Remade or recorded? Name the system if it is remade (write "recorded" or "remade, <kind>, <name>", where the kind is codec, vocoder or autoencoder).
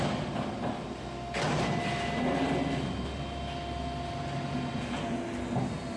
recorded